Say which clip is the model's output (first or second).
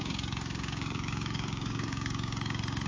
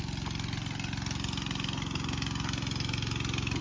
first